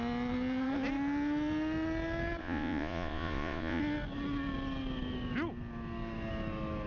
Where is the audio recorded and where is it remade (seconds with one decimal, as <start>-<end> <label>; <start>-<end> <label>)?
0.0-2.4 recorded; 2.4-3.8 remade; 3.8-6.9 recorded